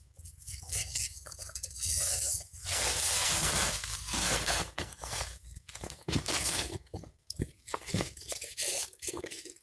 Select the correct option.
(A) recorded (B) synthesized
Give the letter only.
B